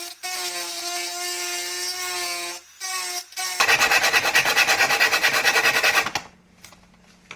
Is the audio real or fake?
real